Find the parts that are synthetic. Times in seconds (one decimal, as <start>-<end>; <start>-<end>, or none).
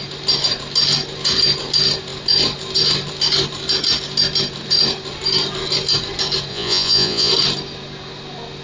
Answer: 6.5-7.3